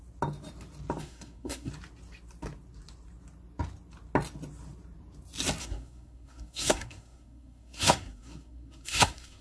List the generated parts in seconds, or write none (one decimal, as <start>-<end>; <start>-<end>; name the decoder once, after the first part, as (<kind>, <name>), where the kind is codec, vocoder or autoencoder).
1.0-1.7 (codec, SNAC); 5.6-9.4